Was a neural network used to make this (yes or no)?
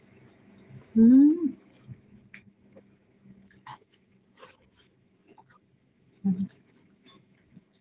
yes